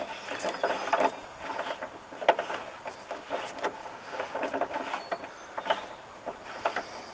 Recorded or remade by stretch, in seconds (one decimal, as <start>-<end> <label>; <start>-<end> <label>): 0.0-3.8 recorded; 3.8-4.8 remade; 4.8-7.1 recorded